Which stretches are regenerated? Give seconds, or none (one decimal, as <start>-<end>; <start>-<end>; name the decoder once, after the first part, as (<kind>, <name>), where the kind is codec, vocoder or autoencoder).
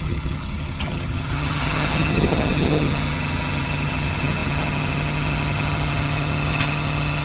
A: 0.0-7.2 (vocoder, HiFi-GAN)